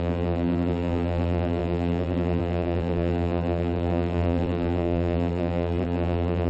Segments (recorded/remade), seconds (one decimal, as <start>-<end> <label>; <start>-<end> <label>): 0.0-6.5 remade